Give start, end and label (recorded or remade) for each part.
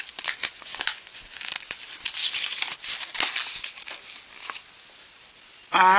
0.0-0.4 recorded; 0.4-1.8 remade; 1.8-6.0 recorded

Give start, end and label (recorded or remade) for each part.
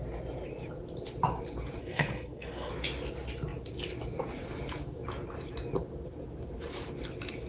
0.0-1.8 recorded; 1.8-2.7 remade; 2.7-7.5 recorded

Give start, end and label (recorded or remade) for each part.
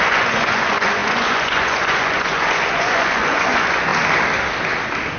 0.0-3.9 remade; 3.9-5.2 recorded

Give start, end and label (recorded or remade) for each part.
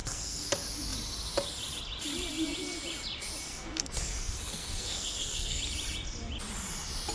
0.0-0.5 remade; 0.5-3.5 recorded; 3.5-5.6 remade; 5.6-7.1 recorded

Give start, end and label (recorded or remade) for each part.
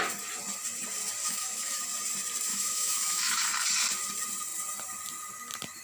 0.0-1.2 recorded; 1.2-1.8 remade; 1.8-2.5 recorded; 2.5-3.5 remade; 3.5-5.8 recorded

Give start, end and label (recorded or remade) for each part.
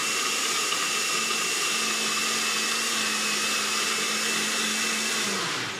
0.0-5.8 recorded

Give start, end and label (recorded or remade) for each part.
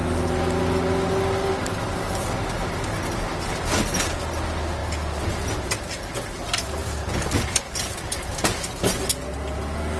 0.0-10.0 recorded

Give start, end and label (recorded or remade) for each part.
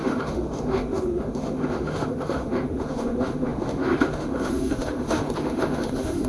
0.0-6.3 remade